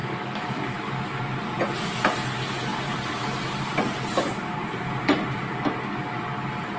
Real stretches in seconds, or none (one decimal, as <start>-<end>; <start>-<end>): 1.2-6.8